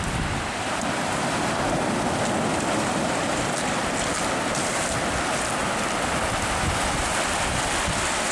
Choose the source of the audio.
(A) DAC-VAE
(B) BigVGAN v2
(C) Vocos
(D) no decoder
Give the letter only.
D